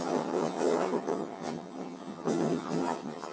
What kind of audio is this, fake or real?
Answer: fake